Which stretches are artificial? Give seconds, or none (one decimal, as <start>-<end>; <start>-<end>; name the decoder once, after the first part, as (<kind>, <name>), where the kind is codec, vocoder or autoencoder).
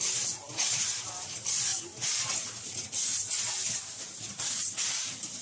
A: none